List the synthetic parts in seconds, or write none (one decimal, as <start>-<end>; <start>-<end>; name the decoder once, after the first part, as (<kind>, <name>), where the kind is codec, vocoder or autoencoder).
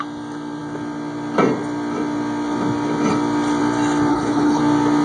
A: 4.1-4.6 (codec, HILCodec)